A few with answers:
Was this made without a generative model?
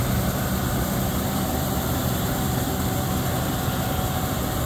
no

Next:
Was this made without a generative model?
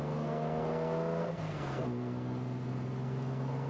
no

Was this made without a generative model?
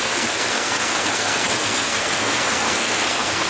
no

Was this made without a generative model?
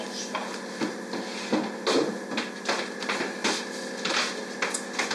yes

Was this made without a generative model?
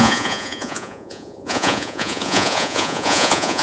no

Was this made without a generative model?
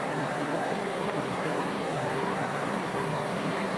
no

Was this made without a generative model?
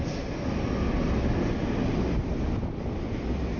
yes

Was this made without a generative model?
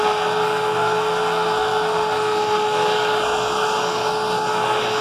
no